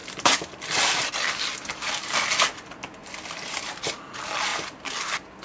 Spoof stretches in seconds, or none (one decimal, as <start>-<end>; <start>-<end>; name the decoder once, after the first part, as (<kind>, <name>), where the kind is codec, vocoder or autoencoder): 0.0-1.1 (vocoder, BigVGAN v2); 3.0-3.7; 4.5-5.4